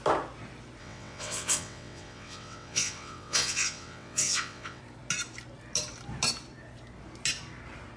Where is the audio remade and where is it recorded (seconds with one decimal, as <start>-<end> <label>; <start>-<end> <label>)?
0.0-0.8 recorded; 0.8-4.8 remade; 4.8-8.0 recorded